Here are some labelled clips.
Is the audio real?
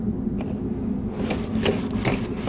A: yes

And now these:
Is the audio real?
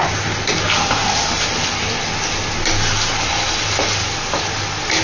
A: yes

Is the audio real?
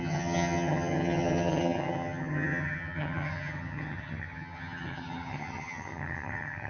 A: no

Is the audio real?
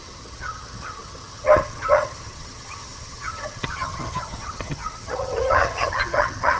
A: no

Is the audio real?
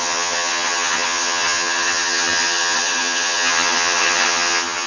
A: no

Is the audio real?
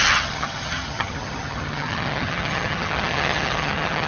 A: no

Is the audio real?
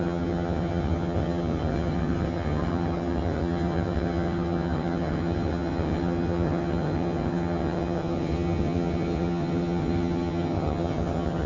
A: no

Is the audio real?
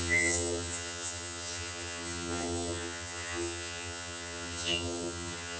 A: no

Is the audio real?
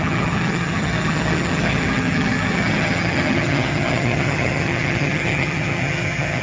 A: no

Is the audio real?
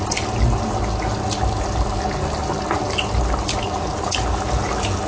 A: yes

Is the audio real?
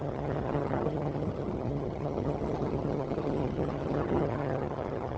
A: no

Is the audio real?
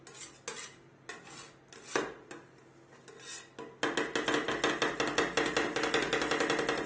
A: yes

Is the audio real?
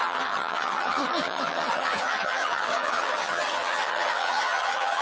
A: no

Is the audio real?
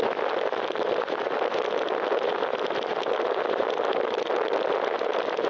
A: yes